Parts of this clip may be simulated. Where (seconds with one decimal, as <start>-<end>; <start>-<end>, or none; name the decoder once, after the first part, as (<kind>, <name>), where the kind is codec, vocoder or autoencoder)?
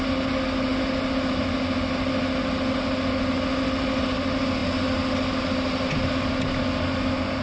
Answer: none